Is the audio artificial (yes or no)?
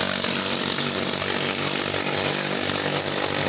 no